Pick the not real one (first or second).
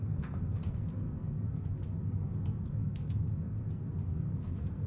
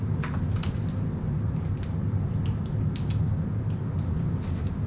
first